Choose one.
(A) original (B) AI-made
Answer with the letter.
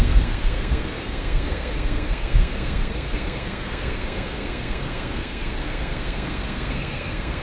B